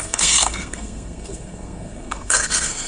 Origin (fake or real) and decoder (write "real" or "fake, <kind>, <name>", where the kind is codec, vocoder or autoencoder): fake, codec, SNAC